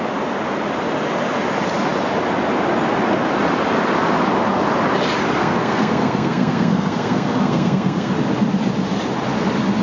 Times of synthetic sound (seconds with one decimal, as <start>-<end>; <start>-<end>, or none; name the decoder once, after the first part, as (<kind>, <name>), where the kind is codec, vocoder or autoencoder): 5.4-8.1 (codec, SNAC)